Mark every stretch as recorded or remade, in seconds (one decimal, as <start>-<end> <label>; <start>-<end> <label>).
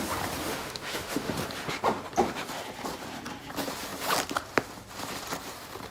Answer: 0.0-0.4 recorded; 0.4-1.3 remade; 1.3-5.9 recorded